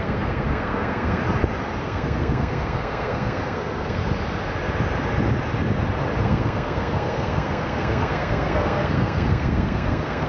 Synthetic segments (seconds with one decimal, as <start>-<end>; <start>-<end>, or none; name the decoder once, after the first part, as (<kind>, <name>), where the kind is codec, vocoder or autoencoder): 0.0-1.2 (codec, SNAC); 1.8-4.0; 6.2-10.3